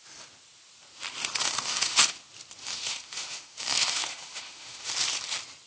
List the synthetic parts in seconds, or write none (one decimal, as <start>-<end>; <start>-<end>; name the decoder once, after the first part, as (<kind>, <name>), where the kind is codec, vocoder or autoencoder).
1.4-2.2 (autoencoder, DAC-VAE); 2.6-4.9